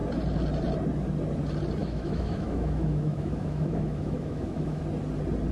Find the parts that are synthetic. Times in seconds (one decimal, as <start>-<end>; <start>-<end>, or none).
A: 1.8-4.8

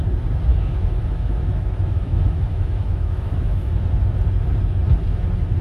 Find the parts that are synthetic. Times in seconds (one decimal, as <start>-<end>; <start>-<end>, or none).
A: 0.5-3.9